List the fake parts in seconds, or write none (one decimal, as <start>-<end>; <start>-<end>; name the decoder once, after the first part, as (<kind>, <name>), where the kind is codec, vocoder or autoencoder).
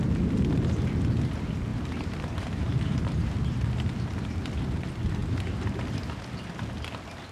1.7-3.9 (vocoder, BigVGAN v2)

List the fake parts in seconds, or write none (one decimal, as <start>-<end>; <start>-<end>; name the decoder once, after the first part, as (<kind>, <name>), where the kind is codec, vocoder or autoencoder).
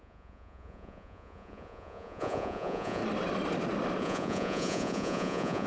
0.0-3.0 (vocoder, Vocos); 4.0-5.7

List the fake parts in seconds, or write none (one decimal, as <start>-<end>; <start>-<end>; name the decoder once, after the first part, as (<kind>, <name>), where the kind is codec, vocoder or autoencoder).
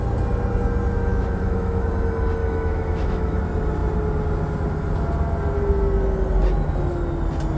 1.1-1.9 (autoencoder, DAC-VAE); 2.4-3.4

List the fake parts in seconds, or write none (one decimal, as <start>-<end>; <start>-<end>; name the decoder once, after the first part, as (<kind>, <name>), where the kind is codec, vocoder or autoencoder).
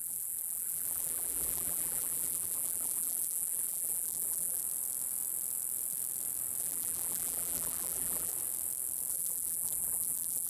0.0-4.6 (vocoder, BigVGAN v2); 6.6-8.3; 9.1-10.5